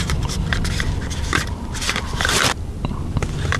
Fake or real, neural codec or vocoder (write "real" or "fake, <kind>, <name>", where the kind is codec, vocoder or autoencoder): fake, vocoder, BigVGAN v2